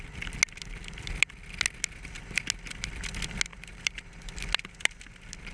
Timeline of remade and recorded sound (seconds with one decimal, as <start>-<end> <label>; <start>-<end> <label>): 0.0-3.5 recorded; 3.5-4.3 remade; 4.3-5.5 recorded